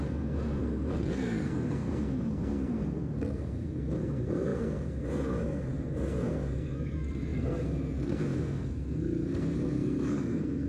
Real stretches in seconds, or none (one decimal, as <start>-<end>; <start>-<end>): none